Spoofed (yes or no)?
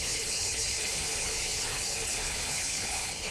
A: yes